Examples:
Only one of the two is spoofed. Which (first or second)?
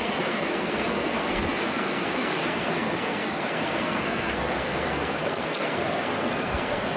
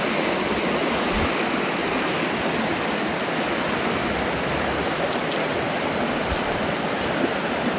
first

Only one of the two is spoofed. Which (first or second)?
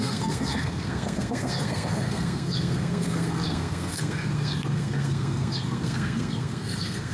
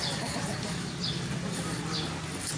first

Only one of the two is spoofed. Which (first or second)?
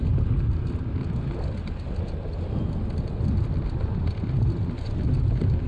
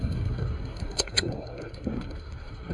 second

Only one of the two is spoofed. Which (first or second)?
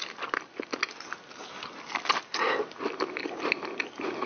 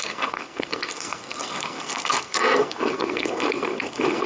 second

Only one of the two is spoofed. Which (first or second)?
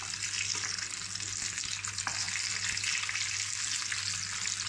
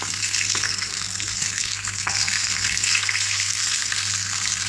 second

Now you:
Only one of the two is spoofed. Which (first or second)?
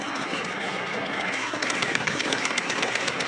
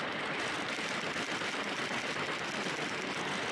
first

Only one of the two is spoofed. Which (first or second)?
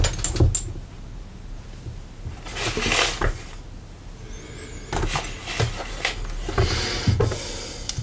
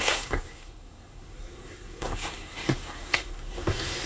second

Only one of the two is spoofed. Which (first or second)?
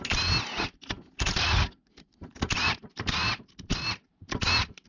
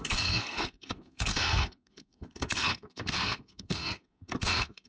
second